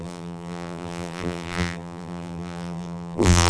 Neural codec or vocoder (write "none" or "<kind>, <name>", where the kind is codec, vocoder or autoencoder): vocoder, BigVGAN v2